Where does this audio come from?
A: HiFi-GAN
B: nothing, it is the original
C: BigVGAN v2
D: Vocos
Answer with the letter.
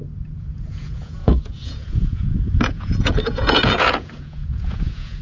D